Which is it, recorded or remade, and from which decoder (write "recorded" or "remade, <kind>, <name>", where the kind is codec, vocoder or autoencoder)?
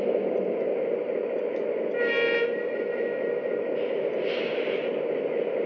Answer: recorded